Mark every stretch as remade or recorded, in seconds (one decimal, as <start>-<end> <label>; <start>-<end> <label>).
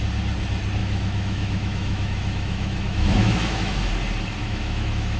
0.0-0.8 recorded; 0.8-3.9 remade; 3.9-4.4 recorded; 4.4-5.2 remade